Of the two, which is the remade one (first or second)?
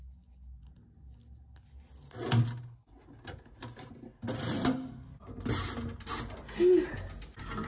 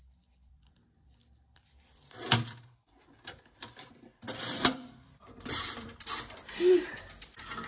second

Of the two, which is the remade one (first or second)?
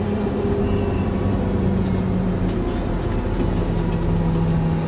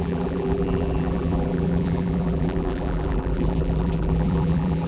second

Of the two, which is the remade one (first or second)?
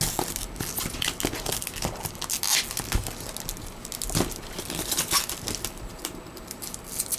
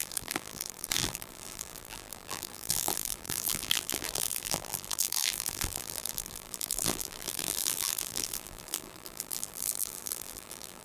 second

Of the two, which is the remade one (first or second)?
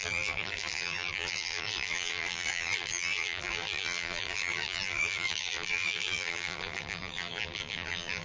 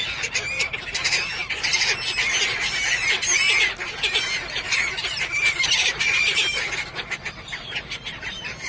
first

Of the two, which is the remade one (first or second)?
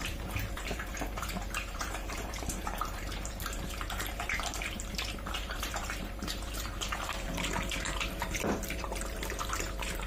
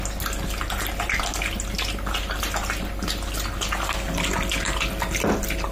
first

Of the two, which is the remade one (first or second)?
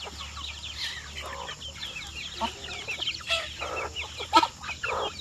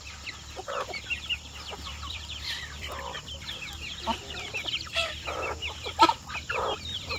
second